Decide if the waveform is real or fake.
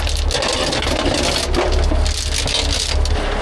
real